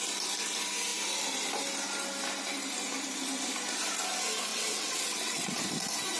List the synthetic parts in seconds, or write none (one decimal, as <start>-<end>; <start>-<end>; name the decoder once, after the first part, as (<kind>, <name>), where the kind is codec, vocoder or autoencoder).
4.5-5.5 (vocoder, WaveNeXt)